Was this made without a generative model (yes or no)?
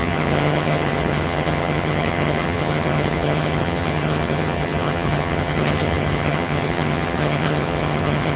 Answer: no